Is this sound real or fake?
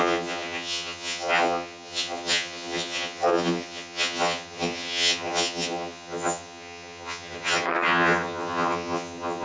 fake